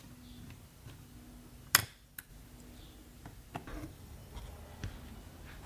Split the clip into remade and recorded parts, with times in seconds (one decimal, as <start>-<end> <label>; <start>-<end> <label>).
0.0-1.8 recorded; 1.8-2.3 remade; 2.3-3.7 recorded; 3.7-4.6 remade; 4.6-5.7 recorded